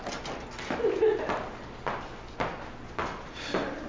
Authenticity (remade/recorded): recorded